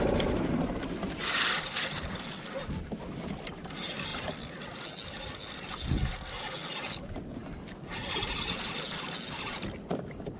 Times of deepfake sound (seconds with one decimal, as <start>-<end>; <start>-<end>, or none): none